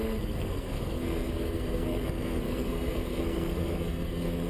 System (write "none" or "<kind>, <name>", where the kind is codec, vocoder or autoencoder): codec, SNAC